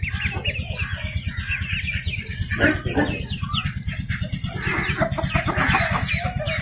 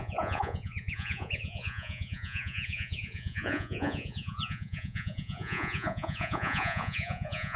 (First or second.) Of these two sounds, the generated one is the second